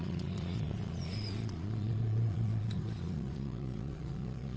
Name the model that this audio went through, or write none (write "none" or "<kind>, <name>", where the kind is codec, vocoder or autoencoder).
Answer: vocoder, Vocos